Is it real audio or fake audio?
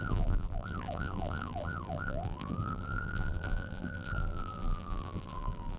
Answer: fake